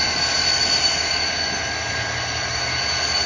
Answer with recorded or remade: recorded